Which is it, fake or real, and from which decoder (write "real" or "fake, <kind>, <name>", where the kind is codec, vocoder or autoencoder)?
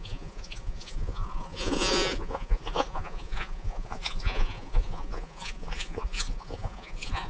fake, vocoder, Vocos